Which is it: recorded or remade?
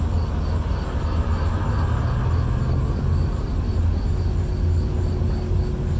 recorded